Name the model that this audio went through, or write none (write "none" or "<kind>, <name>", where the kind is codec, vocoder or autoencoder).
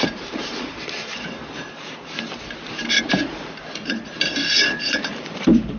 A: vocoder, BigVGAN v2